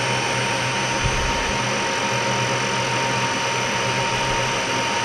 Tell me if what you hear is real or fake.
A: real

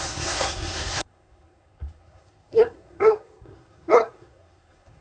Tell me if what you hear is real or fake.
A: fake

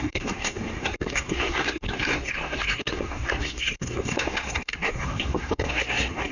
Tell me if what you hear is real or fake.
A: fake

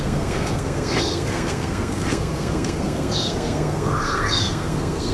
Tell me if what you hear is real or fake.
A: fake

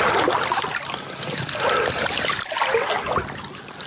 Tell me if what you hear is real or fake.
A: real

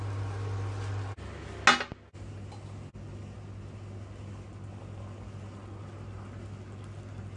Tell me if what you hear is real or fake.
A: real